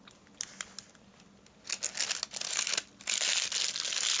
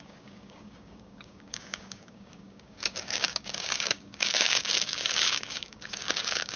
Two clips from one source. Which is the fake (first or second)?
second